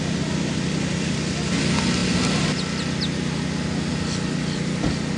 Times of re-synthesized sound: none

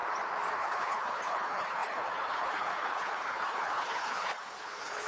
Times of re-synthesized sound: 0.5-5.1 (codec, HILCodec)

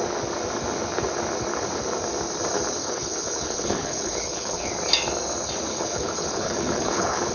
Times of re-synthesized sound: 2.8-4.7 (codec, HILCodec); 5.7-7.3

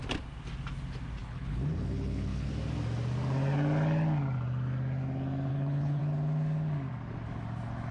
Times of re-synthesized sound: 1.2-2.5 (codec, HILCodec); 5.5-6.0

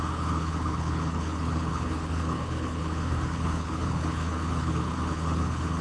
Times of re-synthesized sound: 0.0-5.8 (codec, HILCodec)